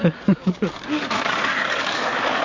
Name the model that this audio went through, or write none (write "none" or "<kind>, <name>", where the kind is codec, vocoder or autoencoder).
codec, DAC